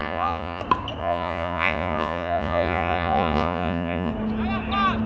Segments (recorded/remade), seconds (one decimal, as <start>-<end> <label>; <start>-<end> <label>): 0.0-0.6 remade; 0.6-1.0 recorded; 1.0-4.1 remade; 4.1-5.1 recorded